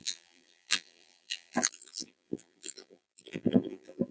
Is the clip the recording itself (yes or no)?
no